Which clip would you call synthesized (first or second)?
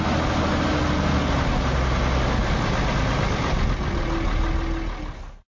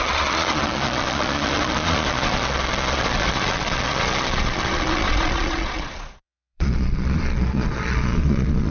second